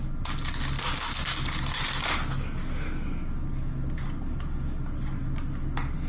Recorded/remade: recorded